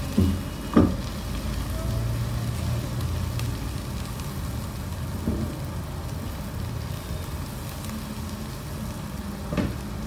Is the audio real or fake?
real